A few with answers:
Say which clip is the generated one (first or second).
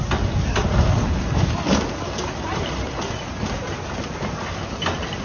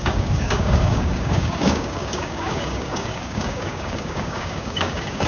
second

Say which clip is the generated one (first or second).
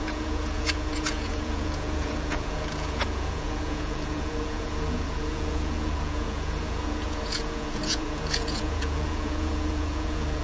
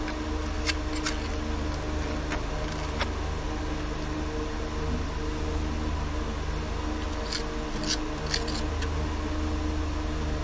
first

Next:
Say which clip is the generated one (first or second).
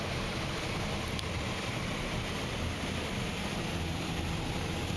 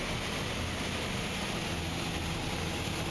first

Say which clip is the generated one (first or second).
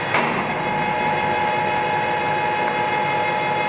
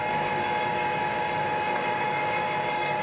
second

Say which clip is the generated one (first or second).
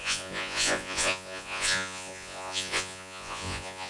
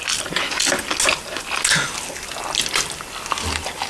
first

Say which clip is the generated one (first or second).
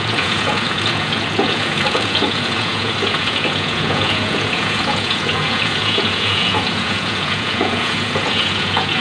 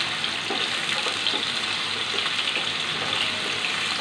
first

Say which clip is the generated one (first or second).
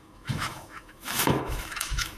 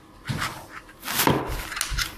first